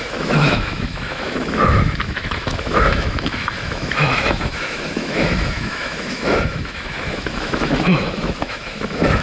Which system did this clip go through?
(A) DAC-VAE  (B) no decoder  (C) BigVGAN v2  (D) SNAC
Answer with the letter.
A